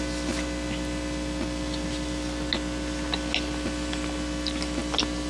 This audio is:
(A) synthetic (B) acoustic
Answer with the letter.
B